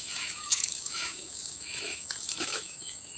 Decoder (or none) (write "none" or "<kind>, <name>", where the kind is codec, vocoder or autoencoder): autoencoder, DAC-VAE